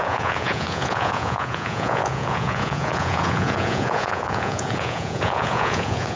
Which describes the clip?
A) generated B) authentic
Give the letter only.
A